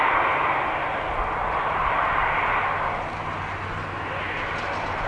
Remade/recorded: recorded